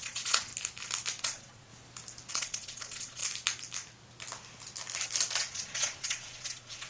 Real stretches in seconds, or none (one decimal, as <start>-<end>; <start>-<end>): 0.5-1.2; 1.7-2.3; 3.2-5.4

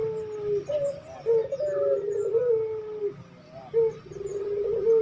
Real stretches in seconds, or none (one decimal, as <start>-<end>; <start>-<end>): 0.0-5.0

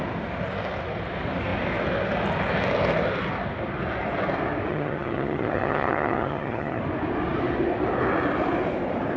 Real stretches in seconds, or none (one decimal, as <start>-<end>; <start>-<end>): 0.0-4.7; 6.8-9.2

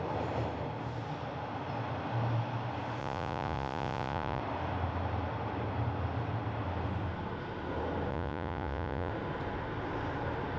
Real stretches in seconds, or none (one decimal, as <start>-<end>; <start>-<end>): 0.0-3.0; 4.4-8.1; 9.1-10.6

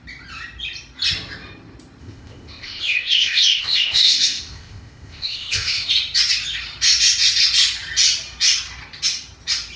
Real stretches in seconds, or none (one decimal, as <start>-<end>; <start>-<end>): 0.0-2.0; 5.9-9.8

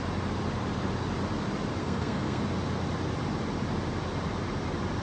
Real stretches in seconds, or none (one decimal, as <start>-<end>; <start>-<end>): 0.0-1.8; 2.4-5.0